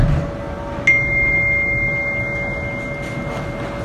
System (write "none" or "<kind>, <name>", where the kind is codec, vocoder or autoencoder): none